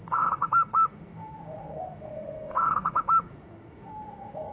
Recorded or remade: remade